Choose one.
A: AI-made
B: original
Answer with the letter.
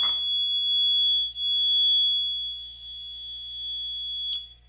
B